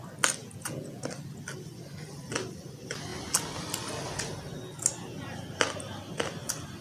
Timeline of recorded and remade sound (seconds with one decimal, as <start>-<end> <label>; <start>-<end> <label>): 0.0-0.4 recorded; 0.4-1.0 remade; 1.0-6.8 recorded